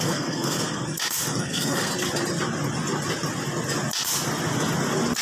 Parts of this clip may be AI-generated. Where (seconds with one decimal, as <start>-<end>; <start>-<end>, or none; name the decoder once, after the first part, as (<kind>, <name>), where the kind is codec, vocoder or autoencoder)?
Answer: 0.0-0.8 (codec, SNAC); 1.4-1.9